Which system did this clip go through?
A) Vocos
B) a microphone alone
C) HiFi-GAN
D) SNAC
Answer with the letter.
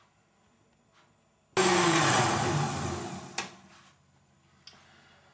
B